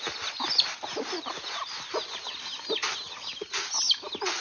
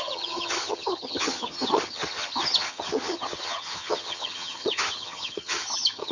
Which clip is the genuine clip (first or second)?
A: first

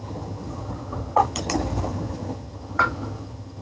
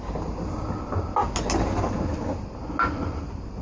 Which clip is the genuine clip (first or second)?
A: second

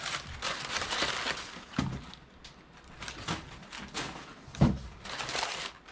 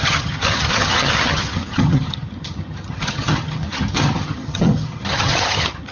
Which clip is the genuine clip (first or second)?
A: first